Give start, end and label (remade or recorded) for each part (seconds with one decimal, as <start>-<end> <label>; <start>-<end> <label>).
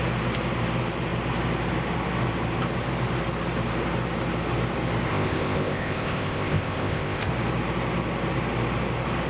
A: 0.0-5.1 recorded; 5.1-7.3 remade; 7.3-9.3 recorded